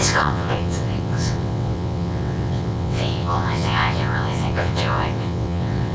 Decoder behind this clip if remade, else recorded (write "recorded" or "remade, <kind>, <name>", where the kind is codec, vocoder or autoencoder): remade, vocoder, WaveNeXt